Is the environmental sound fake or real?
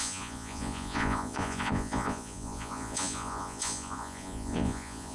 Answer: fake